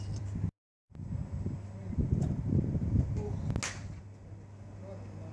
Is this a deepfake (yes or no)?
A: no